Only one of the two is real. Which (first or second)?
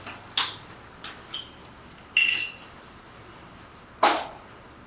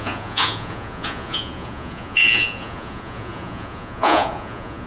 first